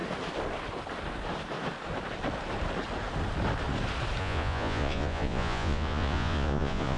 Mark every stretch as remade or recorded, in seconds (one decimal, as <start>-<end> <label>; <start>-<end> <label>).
0.0-4.2 recorded; 4.2-7.0 remade